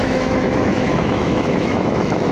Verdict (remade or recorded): remade